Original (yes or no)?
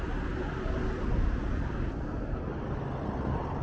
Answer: yes